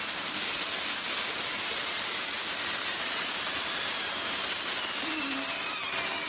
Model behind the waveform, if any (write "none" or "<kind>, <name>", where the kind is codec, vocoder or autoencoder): vocoder, BigVGAN v2